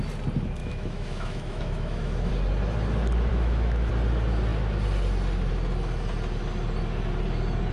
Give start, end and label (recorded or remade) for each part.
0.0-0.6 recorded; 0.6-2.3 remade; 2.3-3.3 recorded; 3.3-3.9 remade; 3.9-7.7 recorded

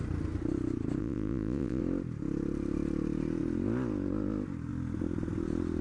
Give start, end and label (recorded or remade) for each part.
0.0-1.0 recorded; 1.0-1.8 remade; 1.8-5.8 recorded